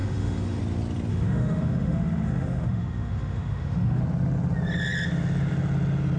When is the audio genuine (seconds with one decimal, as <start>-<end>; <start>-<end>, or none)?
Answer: 0.6-1.1; 4.0-6.2